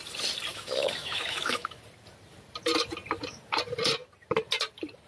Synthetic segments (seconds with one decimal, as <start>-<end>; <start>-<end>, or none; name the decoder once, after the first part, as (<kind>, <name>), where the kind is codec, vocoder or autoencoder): 0.5-1.8 (autoencoder, DAC-VAE)